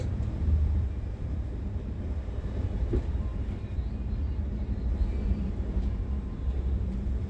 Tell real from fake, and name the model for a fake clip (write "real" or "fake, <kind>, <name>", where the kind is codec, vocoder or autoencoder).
fake, vocoder, BigVGAN v2